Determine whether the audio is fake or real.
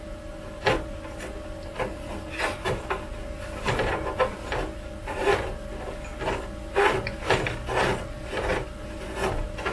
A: real